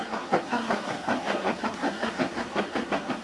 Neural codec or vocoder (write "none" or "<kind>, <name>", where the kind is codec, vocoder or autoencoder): codec, SNAC